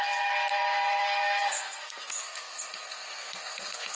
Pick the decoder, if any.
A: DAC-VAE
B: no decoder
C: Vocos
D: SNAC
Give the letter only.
D